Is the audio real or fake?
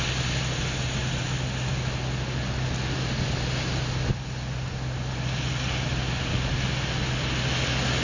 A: real